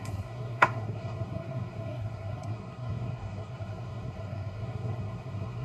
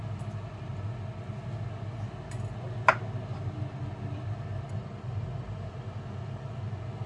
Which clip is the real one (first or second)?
second